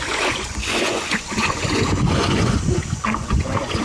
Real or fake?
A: fake